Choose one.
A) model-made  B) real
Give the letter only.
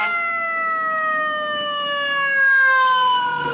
A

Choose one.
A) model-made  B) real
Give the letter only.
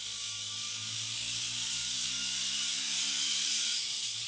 A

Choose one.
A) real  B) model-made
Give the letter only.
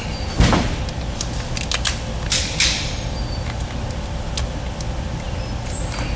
A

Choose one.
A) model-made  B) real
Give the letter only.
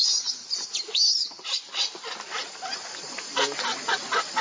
B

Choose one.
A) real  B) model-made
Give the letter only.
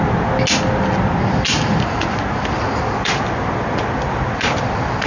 A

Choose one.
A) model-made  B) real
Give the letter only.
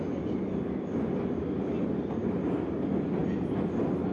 B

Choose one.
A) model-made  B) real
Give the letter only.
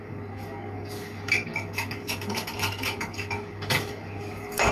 A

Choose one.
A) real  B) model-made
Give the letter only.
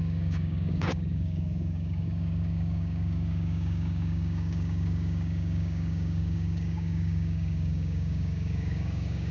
B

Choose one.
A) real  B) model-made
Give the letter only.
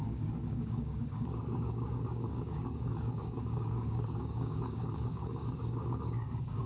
B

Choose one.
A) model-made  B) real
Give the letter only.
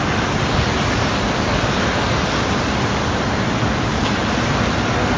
B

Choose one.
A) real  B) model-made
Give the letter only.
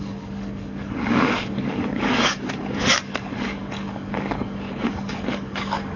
B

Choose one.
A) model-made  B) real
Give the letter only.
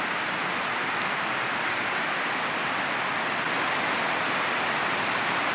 B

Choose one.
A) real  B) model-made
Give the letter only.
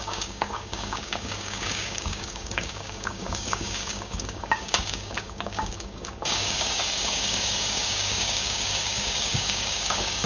B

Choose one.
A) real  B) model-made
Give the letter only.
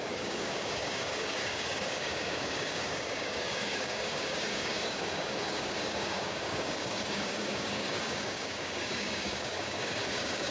B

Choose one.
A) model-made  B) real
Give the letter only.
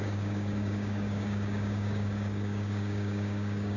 A